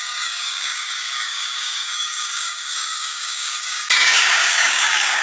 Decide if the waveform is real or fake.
fake